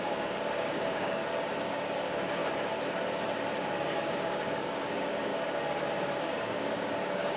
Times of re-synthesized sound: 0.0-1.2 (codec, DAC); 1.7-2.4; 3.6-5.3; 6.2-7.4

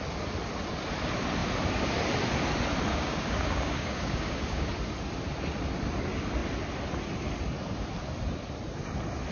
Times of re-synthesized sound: 2.9-4.7 (codec, DAC)